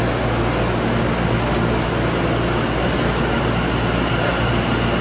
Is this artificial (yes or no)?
no